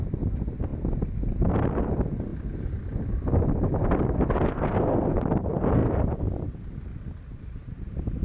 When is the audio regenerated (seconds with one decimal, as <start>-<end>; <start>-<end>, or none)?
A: 2.3-3.4; 5.8-6.6